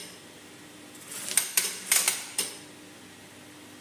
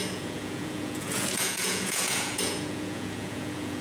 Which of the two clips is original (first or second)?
first